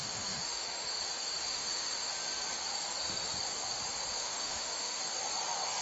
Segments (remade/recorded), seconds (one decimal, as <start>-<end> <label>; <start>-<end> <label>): 0.0-1.0 remade; 1.0-1.5 recorded; 1.5-2.1 remade; 2.1-4.1 recorded; 4.1-5.0 remade; 5.0-5.8 recorded